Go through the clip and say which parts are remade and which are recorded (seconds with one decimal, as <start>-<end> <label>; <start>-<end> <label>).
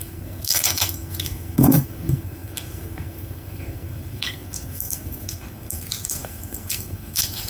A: 0.0-7.5 remade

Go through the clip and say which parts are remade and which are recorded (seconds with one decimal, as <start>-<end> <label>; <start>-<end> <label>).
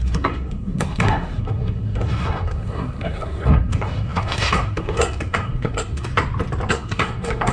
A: 0.0-6.1 remade; 6.1-6.7 recorded; 6.7-7.5 remade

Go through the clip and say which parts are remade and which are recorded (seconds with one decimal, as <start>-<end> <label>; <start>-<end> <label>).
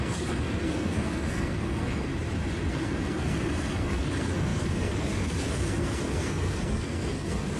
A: 0.0-2.1 remade; 2.1-2.7 recorded; 2.7-7.6 remade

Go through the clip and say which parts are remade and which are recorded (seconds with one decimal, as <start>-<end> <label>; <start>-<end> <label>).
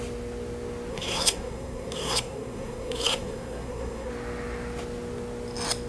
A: 0.0-0.9 recorded; 0.9-4.1 remade; 4.1-5.9 recorded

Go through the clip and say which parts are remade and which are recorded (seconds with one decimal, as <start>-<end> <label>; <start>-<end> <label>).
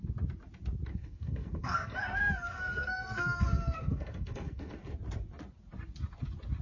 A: 0.0-0.9 recorded; 0.9-4.9 remade; 4.9-6.6 recorded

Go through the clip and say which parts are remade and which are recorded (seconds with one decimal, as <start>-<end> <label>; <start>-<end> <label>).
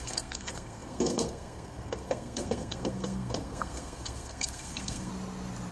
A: 0.0-5.1 remade; 5.1-5.7 recorded